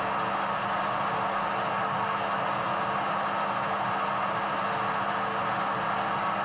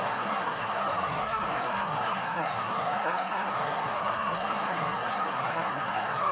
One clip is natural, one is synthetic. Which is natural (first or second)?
first